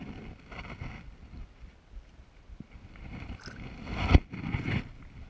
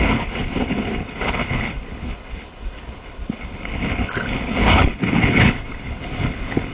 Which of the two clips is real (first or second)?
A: first